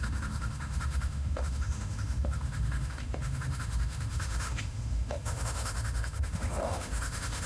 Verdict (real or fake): fake